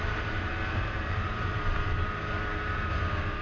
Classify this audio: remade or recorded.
remade